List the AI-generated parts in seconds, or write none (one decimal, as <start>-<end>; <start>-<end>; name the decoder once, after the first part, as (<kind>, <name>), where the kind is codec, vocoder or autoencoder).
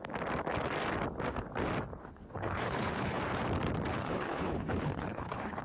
1.9-3.2 (codec, HILCodec); 4.0-5.6